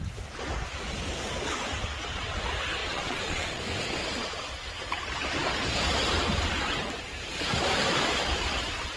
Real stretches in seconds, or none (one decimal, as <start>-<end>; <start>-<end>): 0.0-2.8; 3.6-9.0